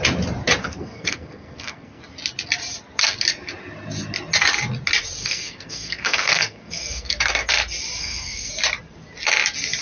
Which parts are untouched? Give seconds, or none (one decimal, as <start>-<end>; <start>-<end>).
0.0-0.6; 2.0-5.2; 7.5-8.0; 8.5-9.8